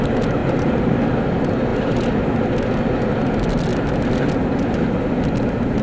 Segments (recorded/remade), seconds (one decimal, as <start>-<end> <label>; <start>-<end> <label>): 0.0-0.4 recorded; 0.4-1.2 remade; 1.2-5.8 recorded